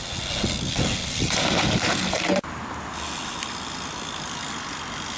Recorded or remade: recorded